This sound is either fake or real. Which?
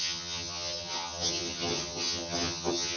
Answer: fake